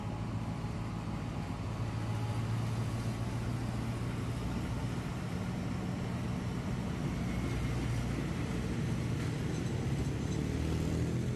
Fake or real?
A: real